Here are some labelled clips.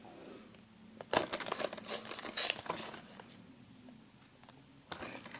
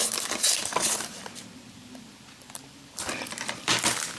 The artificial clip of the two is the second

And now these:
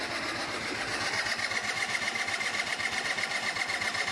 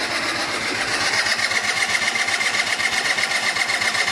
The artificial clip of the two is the first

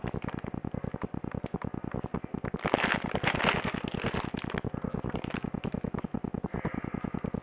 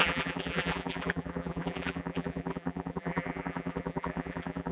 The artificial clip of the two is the second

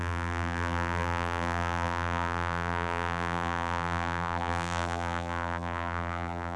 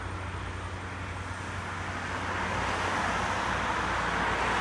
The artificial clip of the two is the first